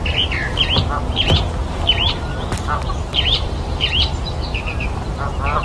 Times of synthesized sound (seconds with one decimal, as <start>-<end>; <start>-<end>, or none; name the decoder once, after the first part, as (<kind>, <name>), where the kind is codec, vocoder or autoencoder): 1.6-5.0 (vocoder, BigVGAN v2)